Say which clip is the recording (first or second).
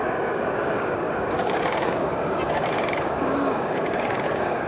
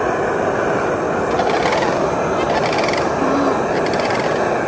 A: second